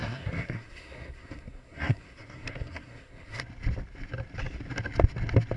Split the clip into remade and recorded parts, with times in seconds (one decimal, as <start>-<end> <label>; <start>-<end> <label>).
0.0-3.4 remade; 3.4-5.6 recorded